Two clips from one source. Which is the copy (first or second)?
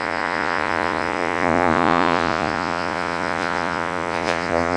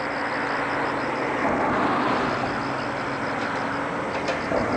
first